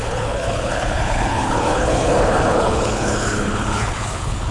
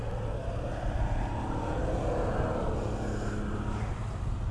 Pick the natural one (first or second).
second